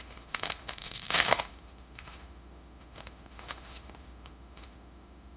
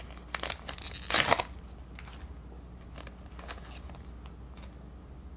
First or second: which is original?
second